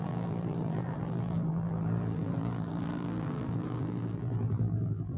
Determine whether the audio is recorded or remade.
remade